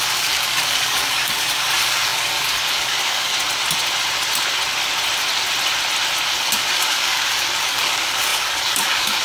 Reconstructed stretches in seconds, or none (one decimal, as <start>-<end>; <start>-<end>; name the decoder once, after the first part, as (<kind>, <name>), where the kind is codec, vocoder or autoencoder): 0.0-3.3 (codec, DAC); 6.3-9.2